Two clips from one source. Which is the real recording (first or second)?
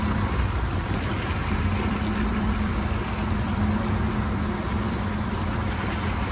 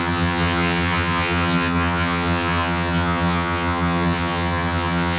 first